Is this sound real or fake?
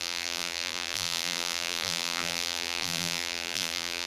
fake